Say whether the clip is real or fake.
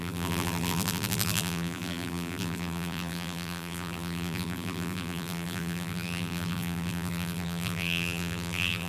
fake